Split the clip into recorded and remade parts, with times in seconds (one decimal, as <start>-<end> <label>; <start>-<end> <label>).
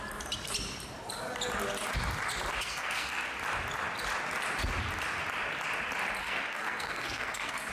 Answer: 0.0-2.6 recorded; 2.6-3.3 remade; 3.3-6.2 recorded; 6.2-7.7 remade